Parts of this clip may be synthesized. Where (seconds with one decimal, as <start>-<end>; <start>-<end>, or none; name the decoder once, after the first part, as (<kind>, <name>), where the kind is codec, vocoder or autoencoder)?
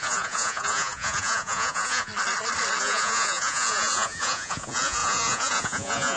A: 0.0-2.1 (vocoder, Vocos); 2.8-6.2